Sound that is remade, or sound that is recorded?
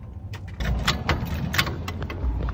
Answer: recorded